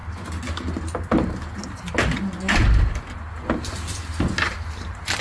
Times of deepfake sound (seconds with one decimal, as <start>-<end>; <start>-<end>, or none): none